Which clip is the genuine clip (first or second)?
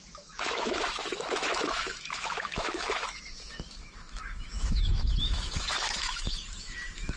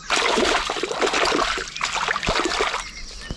second